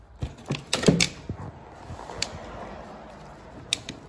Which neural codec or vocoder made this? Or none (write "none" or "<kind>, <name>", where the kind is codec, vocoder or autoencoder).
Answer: none